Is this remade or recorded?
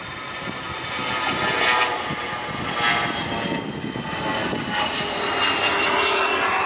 recorded